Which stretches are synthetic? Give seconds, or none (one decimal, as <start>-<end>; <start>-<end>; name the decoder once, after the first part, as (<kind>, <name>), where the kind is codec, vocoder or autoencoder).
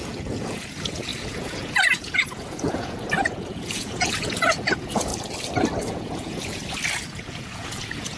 0.0-5.1 (vocoder, Vocos); 5.8-6.6; 7.1-8.2